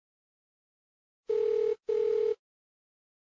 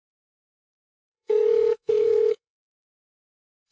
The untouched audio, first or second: first